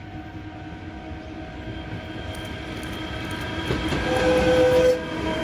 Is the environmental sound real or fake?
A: real